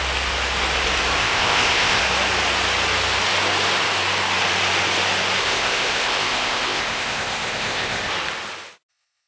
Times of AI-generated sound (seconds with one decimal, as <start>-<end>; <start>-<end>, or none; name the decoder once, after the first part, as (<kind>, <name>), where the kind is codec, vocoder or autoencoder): 1.2-2.0 (codec, ZipCodec); 5.4-8.1; 8.9-9.3